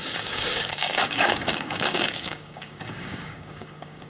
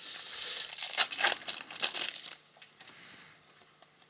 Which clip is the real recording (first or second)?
second